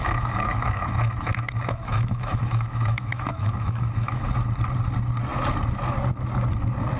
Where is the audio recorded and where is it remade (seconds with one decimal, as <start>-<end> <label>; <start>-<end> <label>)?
0.0-4.2 remade; 4.2-7.0 recorded